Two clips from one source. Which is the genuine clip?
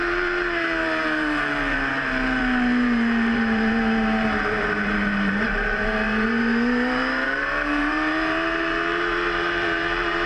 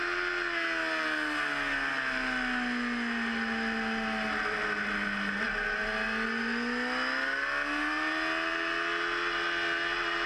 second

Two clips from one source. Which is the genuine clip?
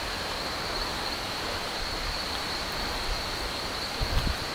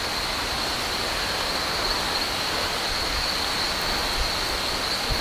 second